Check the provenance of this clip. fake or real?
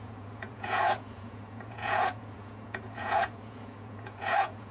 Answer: fake